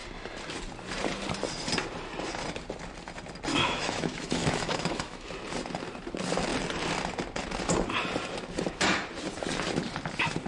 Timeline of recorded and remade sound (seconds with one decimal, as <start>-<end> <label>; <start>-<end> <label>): 0.0-3.5 recorded; 3.5-5.3 remade; 5.3-10.5 recorded